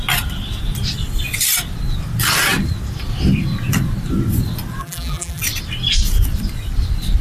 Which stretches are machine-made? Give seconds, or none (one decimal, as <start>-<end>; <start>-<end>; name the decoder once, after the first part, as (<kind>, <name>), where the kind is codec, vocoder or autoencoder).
4.8-5.4 (vocoder, BigVGAN v2)